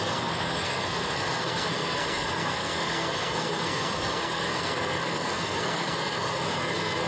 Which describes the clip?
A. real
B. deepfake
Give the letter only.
B